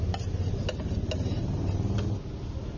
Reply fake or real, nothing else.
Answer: real